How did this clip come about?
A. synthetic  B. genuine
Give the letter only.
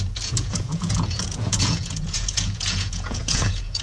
A